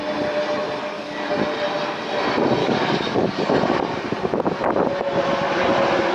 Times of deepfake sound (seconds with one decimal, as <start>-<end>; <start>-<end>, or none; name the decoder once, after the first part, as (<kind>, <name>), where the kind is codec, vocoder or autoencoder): 0.8-1.4 (codec, DAC); 2.6-3.5

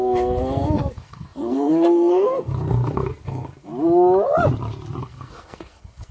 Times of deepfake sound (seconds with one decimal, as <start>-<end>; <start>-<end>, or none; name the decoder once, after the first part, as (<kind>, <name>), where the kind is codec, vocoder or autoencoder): 0.0-3.7 (codec, SNAC); 5.0-6.1

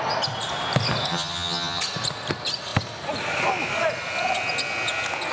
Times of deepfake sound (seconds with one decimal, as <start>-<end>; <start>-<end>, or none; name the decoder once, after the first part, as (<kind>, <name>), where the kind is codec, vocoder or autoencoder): 1.1-1.8 (vocoder, HiFi-GAN)

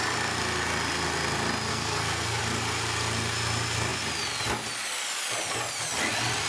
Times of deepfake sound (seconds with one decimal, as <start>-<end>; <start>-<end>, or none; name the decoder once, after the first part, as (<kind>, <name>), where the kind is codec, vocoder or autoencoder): 1.7-2.4 (codec, SNAC)

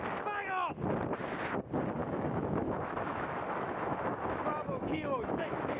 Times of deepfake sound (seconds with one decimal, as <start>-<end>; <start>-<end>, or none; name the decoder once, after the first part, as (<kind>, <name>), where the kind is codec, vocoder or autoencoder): 2.0-5.8 (autoencoder, DAC-VAE)

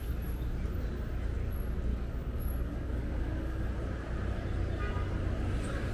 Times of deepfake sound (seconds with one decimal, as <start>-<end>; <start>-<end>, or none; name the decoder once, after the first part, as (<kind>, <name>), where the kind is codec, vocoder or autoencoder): 1.9-3.7 (codec, DAC)

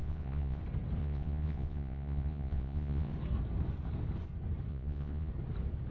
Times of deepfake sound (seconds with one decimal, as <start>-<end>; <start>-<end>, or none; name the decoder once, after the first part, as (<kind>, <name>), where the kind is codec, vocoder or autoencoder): 0.0-0.6 (vocoder, Vocos); 1.0-3.1; 4.7-5.3

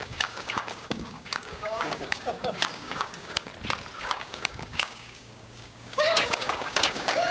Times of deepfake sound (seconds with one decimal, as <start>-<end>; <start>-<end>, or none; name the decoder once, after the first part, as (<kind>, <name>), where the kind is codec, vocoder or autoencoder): 0.0-3.5 (codec, DAC); 4.0-7.3